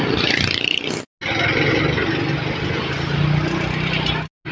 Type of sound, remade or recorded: recorded